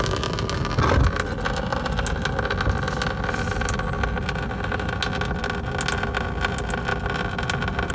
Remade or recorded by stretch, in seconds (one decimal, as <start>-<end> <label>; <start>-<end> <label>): 0.0-7.9 recorded